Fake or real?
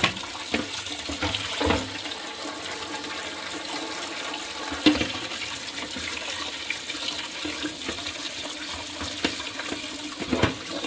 real